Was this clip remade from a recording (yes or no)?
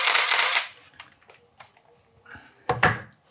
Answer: no